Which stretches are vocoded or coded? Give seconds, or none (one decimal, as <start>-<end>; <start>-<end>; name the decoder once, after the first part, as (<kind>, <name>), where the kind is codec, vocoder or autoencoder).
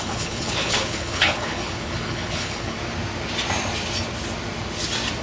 0.0-2.8 (codec, HILCodec)